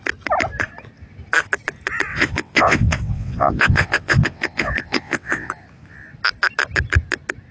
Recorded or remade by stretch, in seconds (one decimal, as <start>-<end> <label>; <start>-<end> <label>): 0.0-2.1 recorded; 2.1-5.5 remade; 5.5-7.5 recorded